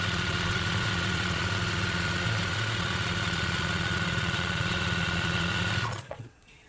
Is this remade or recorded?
remade